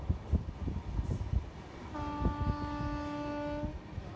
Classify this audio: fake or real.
real